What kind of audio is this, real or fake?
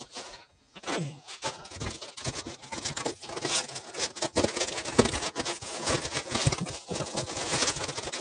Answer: real